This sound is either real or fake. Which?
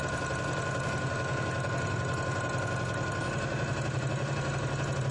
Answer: real